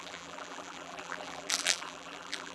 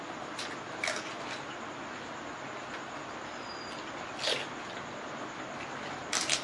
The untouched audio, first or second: second